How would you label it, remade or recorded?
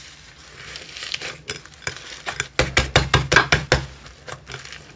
recorded